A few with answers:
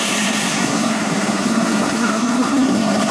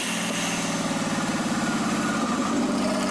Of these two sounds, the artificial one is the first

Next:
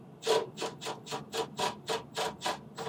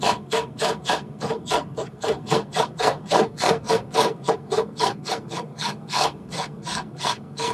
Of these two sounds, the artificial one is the second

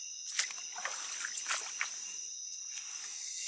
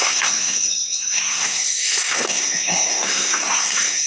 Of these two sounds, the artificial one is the second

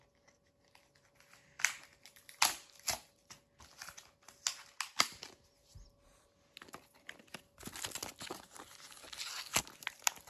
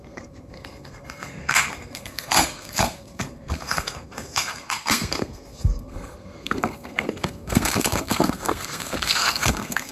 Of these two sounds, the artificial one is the second